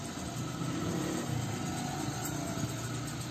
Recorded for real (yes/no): yes